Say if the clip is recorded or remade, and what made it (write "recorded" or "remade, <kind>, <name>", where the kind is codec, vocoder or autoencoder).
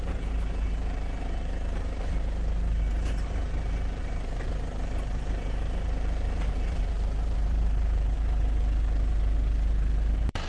remade, vocoder, BigVGAN v2